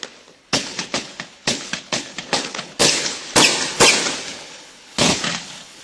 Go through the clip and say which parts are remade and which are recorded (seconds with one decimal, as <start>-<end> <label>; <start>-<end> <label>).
0.0-0.4 recorded; 0.4-3.2 remade; 3.2-4.3 recorded; 4.3-5.8 remade